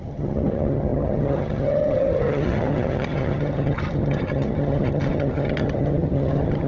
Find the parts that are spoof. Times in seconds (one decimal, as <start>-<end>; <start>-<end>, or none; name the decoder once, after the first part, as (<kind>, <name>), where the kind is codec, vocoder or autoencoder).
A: 0.0-6.7 (vocoder, HiFi-GAN)